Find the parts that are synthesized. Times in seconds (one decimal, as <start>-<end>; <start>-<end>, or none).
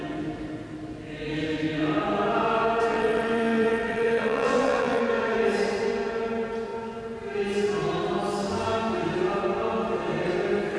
2.9-5.0